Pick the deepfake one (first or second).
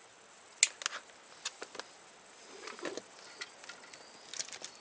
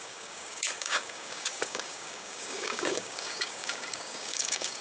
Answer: second